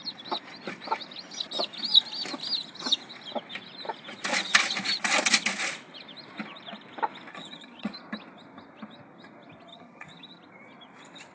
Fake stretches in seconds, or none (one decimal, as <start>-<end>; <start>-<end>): 7.3-7.9; 9.7-10.4